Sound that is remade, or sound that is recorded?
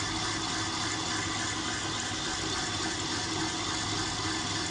recorded